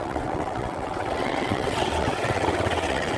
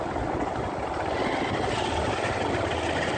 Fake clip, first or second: first